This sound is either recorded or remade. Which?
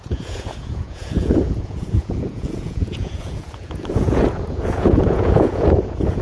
remade